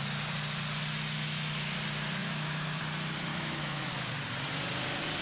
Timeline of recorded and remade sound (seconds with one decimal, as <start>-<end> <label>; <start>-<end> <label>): 0.0-2.2 recorded; 2.2-2.8 remade; 2.8-3.3 recorded; 3.3-3.9 remade; 3.9-5.2 recorded